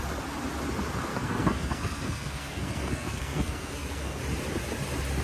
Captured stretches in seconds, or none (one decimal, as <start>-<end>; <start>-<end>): 0.0-1.1; 4.2-5.2